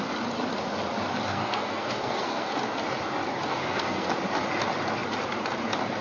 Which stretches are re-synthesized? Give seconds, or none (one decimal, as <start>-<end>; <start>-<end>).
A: 1.3-2.5; 3.5-4.1